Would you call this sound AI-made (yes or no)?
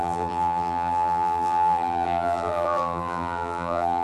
yes